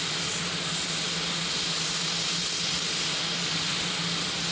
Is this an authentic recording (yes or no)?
yes